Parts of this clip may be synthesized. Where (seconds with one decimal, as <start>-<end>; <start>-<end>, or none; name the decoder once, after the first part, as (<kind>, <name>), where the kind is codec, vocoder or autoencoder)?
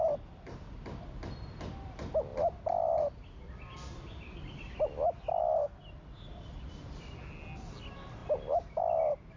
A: 2.3-5.4 (vocoder, BigVGAN v2); 8.2-8.8